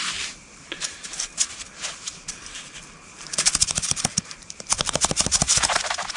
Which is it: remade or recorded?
remade